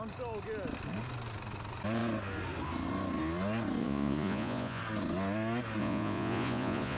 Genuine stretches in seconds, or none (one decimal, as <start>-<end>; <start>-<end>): 0.0-3.8; 4.8-5.8